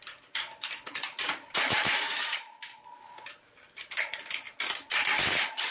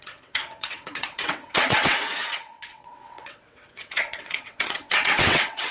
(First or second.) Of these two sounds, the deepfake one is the second